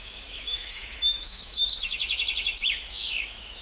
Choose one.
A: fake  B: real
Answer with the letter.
A